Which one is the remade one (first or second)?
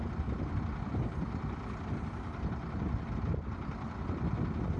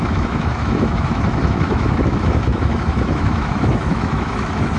second